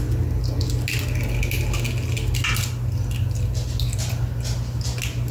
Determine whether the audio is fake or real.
real